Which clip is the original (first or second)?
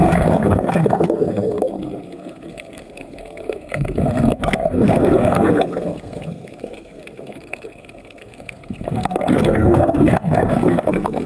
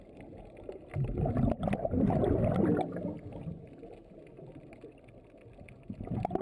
second